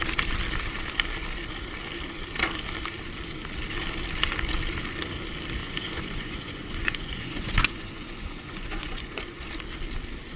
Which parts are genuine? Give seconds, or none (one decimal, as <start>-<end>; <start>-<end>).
0.0-5.6; 9.5-10.4